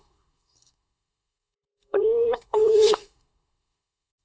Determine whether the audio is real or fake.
fake